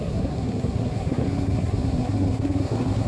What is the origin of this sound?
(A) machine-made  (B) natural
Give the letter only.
A